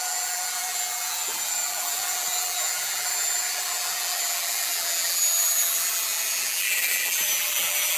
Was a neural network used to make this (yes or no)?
yes